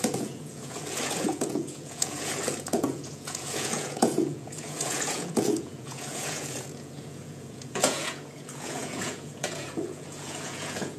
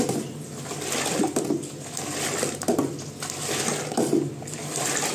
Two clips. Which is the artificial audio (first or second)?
first